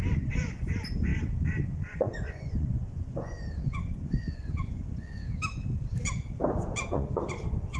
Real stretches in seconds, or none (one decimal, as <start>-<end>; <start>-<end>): 5.2-6.9